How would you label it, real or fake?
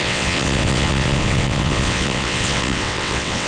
fake